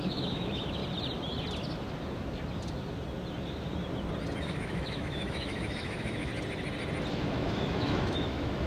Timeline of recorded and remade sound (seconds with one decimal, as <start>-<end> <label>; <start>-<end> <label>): 0.0-0.8 remade; 0.8-4.4 recorded; 4.4-6.3 remade; 6.3-7.1 recorded; 7.1-8.7 remade